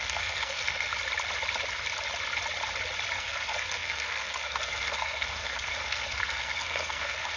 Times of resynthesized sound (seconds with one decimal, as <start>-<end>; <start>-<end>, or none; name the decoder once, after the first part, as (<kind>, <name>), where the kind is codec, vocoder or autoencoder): 0.0-0.9 (codec, SNAC); 3.1-7.4